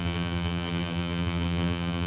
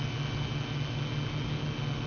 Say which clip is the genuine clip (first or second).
second